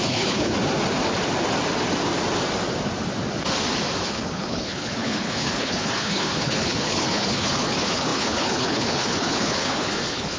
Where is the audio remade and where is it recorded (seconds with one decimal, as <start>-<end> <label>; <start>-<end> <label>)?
0.0-0.5 remade; 0.5-4.0 recorded; 4.0-10.4 remade